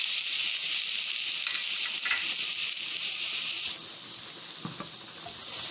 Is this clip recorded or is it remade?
recorded